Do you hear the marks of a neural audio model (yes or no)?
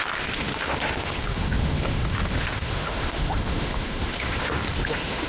yes